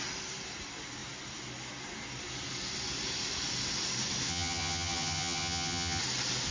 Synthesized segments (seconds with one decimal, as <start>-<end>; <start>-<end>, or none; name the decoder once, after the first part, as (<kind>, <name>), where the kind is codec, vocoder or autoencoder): 4.3-6.0 (vocoder, HiFi-GAN)